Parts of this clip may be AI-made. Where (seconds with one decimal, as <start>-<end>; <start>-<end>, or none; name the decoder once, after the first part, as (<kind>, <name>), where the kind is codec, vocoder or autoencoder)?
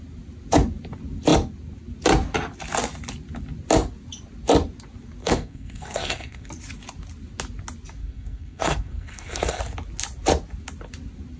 5.2-6.5 (codec, SNAC); 8.0-9.6